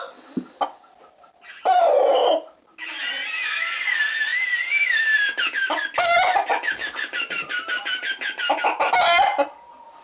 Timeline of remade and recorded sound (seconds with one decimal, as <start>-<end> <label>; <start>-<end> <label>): 0.0-4.3 recorded; 4.3-8.9 remade; 8.9-10.0 recorded